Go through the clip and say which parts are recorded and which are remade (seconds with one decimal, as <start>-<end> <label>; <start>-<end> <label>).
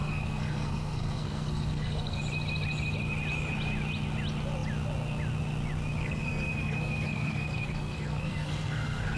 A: 0.0-2.2 remade; 2.2-6.0 recorded; 6.0-9.2 remade